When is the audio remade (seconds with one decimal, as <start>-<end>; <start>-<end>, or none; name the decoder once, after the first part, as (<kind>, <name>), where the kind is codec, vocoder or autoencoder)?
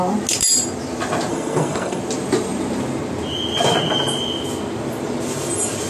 1.3-2.0 (codec, SNAC)